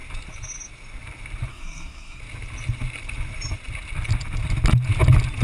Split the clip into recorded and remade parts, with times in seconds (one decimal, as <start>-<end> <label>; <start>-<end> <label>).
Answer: 0.0-1.5 recorded; 1.5-2.2 remade; 2.2-5.4 recorded